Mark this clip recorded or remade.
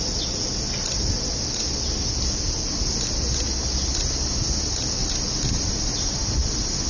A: recorded